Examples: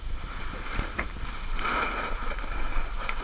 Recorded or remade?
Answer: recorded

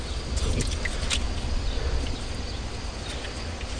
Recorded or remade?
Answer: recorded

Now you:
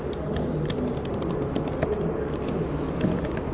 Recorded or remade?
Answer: recorded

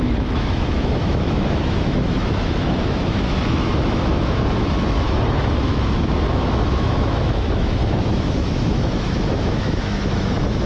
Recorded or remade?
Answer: remade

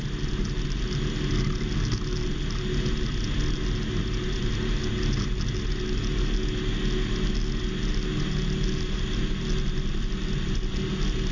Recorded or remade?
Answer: recorded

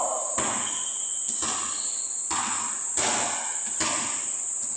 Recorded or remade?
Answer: recorded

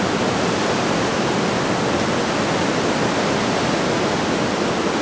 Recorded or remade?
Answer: recorded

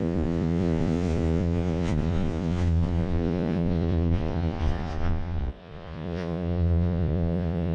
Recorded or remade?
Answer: remade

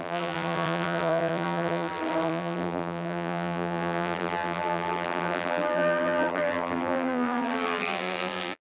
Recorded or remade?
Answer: remade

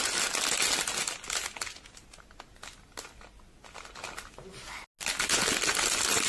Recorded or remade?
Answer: recorded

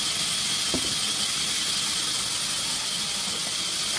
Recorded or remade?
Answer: recorded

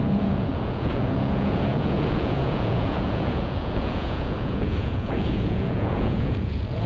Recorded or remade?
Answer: remade